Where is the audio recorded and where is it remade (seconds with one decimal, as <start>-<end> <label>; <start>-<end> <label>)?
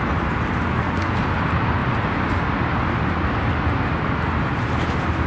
0.0-0.7 recorded; 0.7-1.2 remade; 1.2-5.3 recorded